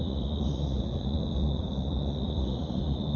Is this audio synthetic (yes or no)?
yes